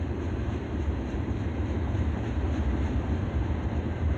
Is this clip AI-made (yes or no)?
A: yes